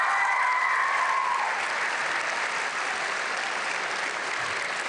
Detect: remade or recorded recorded